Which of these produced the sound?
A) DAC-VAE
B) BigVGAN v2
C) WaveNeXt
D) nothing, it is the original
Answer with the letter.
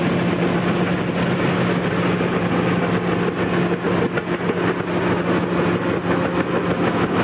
D